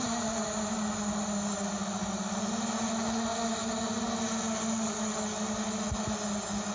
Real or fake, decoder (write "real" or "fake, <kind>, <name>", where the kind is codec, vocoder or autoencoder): real